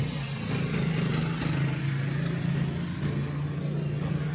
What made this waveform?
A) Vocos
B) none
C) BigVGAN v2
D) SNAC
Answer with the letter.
B